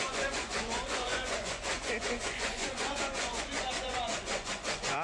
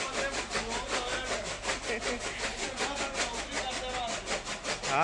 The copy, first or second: first